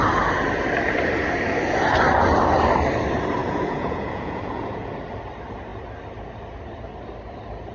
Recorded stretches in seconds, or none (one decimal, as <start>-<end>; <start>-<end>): 0.0-3.4; 4.9-7.7